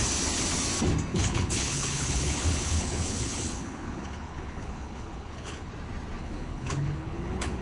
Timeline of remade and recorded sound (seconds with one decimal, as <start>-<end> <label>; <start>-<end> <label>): 0.0-1.1 recorded; 1.1-5.7 remade; 5.7-6.2 recorded; 6.2-7.6 remade